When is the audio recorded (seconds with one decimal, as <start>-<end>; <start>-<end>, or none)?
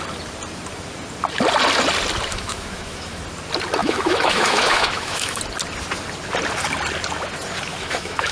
0.0-2.3; 3.2-3.8; 5.4-7.7